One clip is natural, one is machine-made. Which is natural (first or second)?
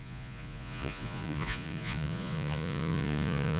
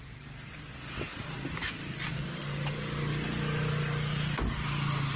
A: second